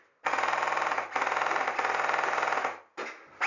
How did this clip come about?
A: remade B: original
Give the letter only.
B